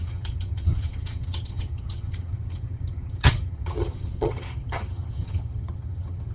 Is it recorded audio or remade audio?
remade